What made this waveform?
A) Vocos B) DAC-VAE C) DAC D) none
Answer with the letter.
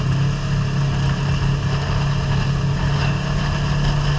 D